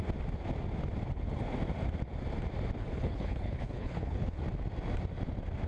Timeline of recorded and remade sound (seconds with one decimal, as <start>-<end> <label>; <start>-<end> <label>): 0.0-2.8 recorded; 2.8-4.4 remade; 4.4-5.7 recorded